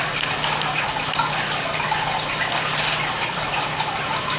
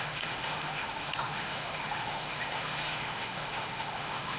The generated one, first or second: second